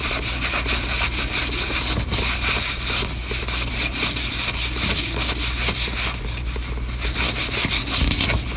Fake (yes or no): no